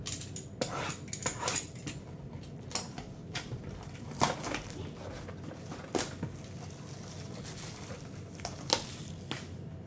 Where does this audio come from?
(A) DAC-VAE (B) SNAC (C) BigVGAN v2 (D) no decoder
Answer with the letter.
D